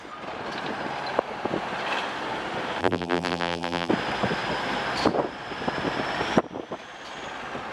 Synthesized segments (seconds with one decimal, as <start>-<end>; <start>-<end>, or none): 2.8-3.9